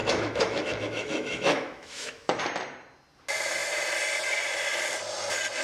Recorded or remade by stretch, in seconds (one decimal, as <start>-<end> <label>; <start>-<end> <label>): 0.0-2.4 remade; 2.4-5.6 recorded